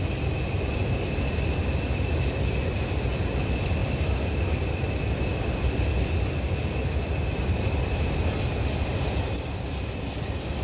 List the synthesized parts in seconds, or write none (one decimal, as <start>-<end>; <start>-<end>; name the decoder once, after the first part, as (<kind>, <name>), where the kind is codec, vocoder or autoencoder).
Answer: none